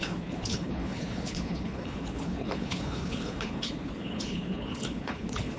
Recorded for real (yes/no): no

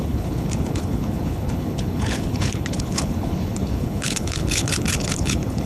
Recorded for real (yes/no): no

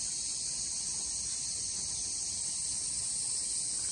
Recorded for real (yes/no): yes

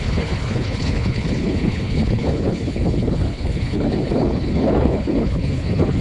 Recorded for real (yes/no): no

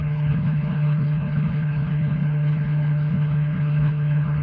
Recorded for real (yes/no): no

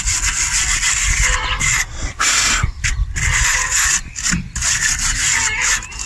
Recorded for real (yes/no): yes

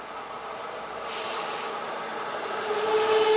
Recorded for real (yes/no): yes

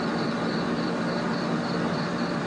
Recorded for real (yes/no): yes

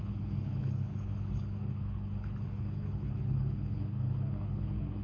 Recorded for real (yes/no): no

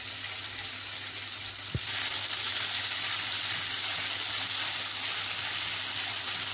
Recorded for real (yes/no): yes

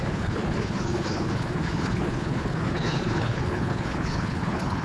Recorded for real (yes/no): no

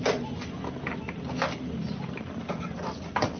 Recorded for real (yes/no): yes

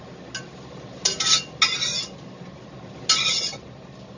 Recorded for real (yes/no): yes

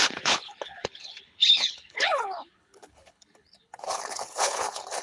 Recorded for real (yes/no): no